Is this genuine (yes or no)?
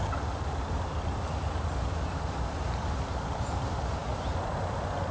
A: no